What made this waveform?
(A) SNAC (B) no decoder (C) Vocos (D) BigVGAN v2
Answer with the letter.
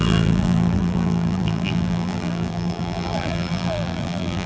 D